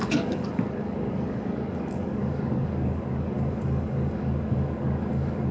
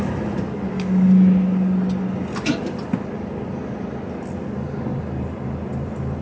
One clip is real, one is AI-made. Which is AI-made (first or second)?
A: first